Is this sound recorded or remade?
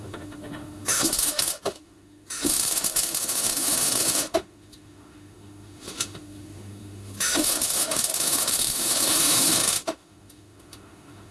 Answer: remade